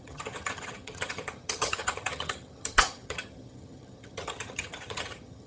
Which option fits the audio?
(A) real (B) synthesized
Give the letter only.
B